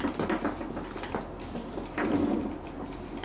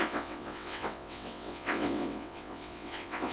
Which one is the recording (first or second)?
first